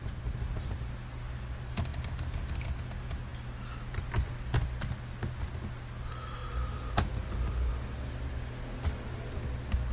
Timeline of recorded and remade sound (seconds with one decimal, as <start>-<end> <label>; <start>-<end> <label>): 0.0-9.9 recorded